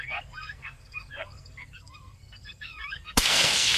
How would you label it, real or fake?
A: fake